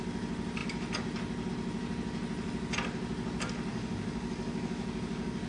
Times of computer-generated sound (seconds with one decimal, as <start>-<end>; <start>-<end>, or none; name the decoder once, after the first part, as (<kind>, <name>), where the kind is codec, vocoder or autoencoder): 3.7-5.5 (codec, DAC)